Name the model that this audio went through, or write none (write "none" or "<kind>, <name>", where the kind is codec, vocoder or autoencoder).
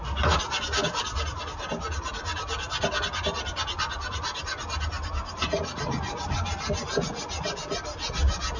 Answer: none